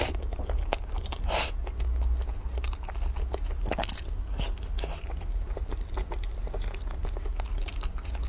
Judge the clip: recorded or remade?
recorded